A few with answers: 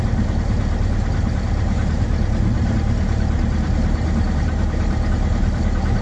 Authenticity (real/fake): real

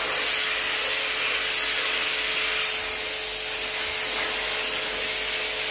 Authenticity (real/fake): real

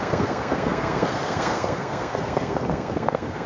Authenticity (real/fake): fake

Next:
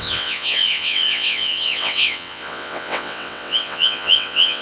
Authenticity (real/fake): fake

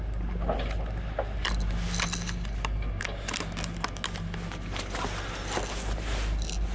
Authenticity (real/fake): real